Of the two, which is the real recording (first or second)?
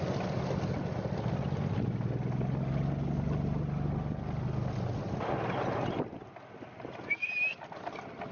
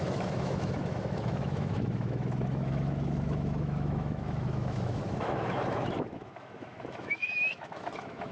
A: first